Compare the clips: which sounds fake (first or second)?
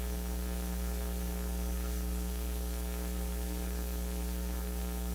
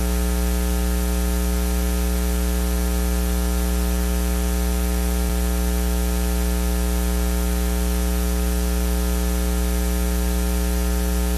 first